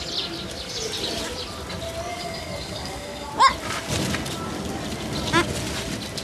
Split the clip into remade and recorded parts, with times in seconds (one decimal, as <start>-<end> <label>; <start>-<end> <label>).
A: 0.0-2.1 recorded; 2.1-3.3 remade; 3.3-6.2 recorded